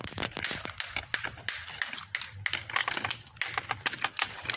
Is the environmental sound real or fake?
real